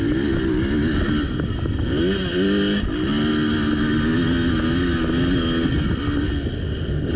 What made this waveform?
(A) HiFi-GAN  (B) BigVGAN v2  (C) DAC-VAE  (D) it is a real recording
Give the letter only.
D